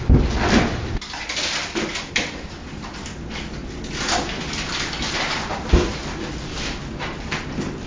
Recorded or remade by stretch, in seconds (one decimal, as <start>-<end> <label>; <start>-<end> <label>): 0.0-7.9 recorded